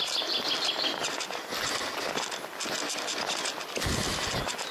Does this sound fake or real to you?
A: real